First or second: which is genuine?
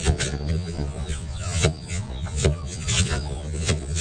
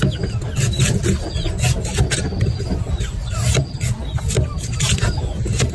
second